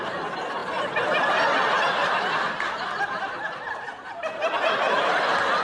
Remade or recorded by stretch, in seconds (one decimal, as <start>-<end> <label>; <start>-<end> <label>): 0.0-5.6 recorded